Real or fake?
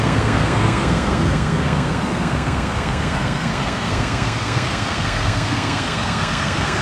fake